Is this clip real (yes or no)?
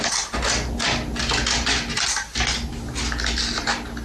yes